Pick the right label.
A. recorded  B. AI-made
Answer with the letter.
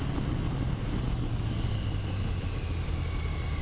A